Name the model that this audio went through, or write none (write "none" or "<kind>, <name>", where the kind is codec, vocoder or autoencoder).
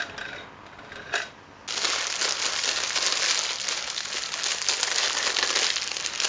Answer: none